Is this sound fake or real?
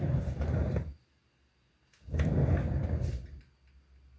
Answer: real